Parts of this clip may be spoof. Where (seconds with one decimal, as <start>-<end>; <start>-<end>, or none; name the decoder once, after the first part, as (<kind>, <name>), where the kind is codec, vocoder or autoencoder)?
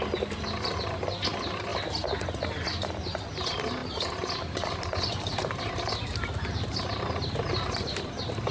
none